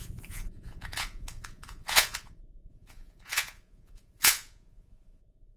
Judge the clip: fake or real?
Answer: fake